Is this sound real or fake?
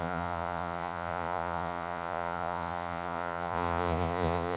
fake